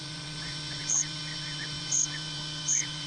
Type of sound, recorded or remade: remade